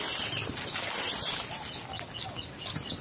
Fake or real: real